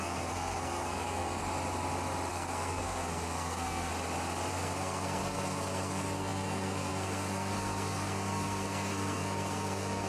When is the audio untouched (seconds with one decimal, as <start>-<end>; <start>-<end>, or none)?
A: 1.4-2.3; 3.9-4.5